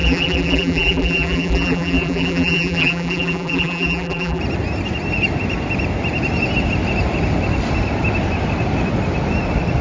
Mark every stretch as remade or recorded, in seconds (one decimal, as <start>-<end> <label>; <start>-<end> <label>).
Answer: 0.0-4.4 remade; 4.4-9.8 recorded